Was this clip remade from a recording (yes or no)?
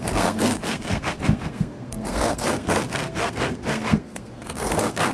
yes